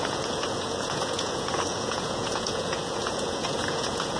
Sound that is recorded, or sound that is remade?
remade